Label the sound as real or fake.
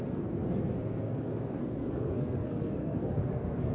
fake